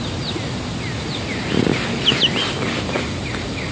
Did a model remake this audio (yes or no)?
no